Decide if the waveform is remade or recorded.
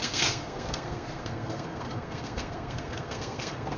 remade